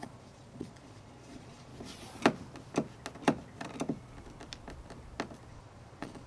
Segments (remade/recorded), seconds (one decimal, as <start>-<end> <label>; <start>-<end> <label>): 0.0-1.7 remade; 1.7-5.5 recorded; 5.5-6.3 remade